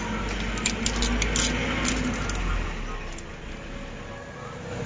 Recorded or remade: recorded